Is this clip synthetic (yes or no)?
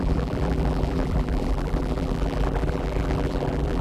yes